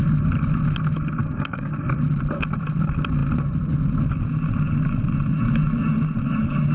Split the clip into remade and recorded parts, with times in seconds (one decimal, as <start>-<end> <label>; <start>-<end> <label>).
0.0-1.2 recorded; 1.2-1.8 remade; 1.8-6.7 recorded